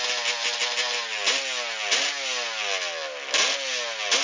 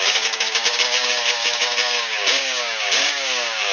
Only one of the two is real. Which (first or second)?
first